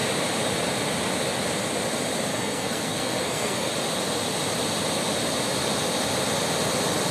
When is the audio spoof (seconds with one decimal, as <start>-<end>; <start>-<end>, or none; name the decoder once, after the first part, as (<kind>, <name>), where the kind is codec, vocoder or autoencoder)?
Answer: 2.3-3.7 (codec, SNAC)